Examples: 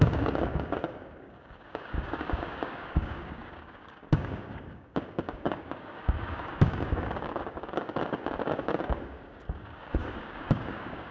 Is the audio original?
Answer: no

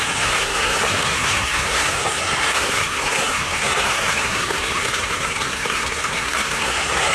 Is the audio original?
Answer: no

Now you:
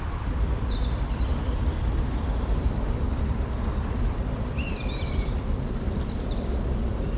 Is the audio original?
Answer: no